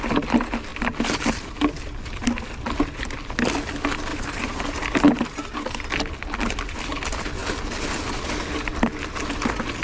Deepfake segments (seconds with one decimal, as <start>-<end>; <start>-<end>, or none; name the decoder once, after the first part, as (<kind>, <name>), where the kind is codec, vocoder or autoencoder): 4.1-4.7 (vocoder, BigVGAN v2)